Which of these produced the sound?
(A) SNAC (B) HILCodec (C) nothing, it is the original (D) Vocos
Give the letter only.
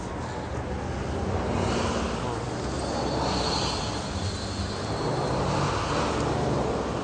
C